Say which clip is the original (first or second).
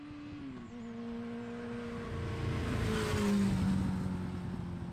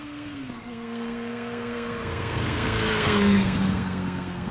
first